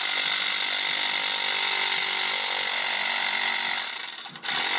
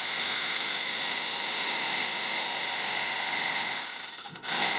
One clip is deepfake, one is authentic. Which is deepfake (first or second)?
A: second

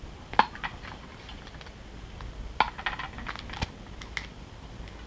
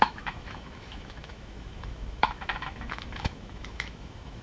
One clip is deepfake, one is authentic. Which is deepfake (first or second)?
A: second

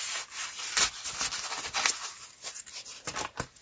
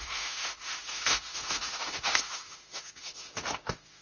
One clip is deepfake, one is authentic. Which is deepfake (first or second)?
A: second